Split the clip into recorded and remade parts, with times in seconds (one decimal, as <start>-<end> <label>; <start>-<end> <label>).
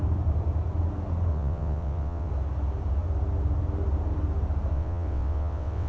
0.0-1.3 recorded; 1.3-2.3 remade; 2.3-4.7 recorded; 4.7-5.9 remade